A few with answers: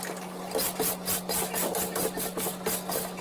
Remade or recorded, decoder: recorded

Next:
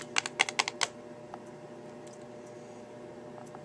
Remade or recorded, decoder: recorded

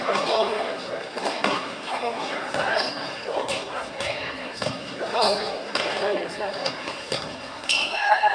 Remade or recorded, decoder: remade, codec, SNAC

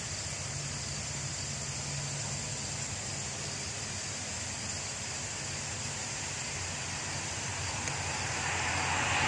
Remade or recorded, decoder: recorded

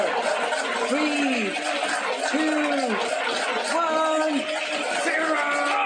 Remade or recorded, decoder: recorded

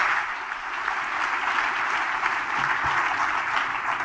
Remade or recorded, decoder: recorded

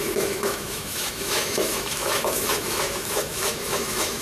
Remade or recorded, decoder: remade, autoencoder, DAC-VAE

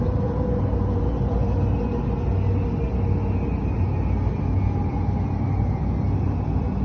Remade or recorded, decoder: recorded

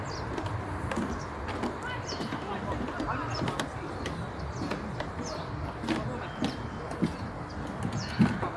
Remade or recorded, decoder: recorded